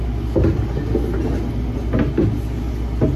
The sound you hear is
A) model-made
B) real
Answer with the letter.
B